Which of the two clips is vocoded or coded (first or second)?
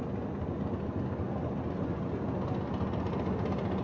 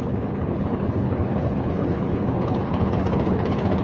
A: second